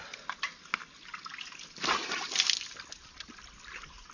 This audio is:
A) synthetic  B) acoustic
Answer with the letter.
B